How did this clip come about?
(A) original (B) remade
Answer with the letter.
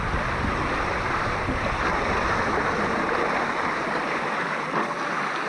A